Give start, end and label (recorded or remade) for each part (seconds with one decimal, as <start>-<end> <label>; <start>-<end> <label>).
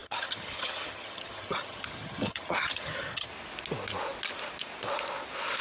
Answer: 0.0-3.3 remade; 3.3-5.6 recorded